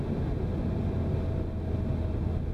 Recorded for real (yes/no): yes